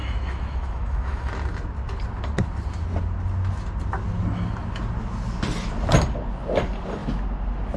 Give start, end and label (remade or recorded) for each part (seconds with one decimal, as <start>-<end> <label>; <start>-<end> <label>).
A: 0.0-1.3 remade; 1.3-7.8 recorded